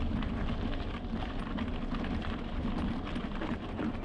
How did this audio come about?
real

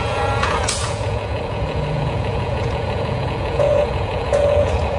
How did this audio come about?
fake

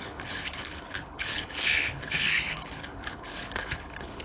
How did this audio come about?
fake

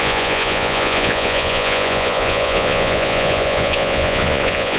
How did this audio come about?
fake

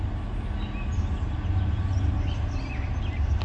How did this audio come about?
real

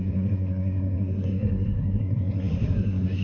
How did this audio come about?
fake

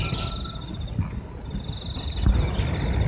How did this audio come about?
real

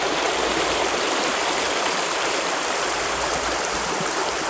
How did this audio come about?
fake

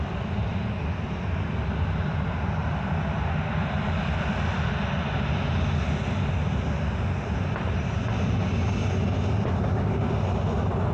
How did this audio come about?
real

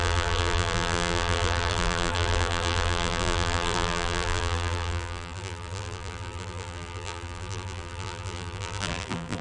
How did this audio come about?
fake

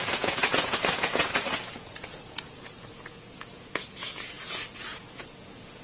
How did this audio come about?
fake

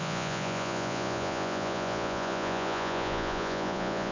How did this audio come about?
fake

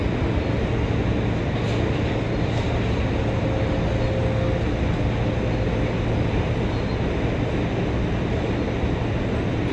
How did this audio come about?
real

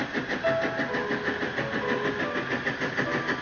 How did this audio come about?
real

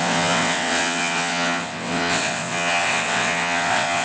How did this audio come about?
fake